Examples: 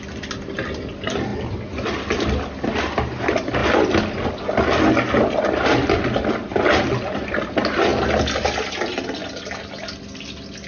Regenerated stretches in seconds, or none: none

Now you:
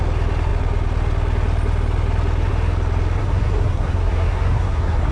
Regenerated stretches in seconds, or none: 3.2-5.1 (codec, SNAC)

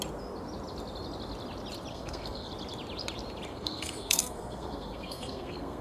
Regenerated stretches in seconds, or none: 1.9-2.5 (codec, SNAC); 3.5-5.8

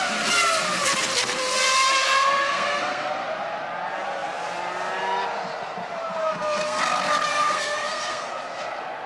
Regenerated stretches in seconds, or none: 2.0-3.1 (codec, SNAC); 6.2-6.8; 7.3-8.3

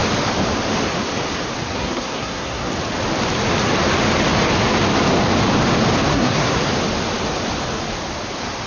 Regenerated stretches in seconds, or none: 1.7-2.7 (codec, SNAC); 6.1-6.6